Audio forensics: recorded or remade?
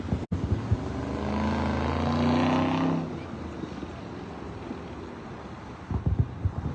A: recorded